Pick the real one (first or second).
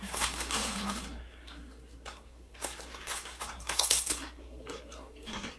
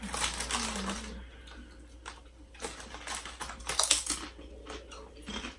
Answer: second